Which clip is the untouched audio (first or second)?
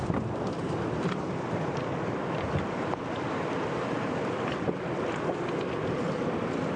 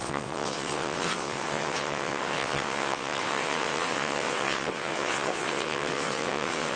first